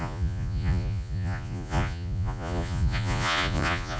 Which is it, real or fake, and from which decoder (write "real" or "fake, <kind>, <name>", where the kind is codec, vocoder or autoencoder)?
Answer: fake, vocoder, Vocos